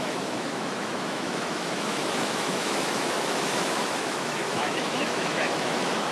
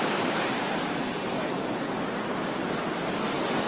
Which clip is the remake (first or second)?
first